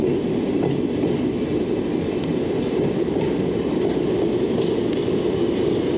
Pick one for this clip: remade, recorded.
recorded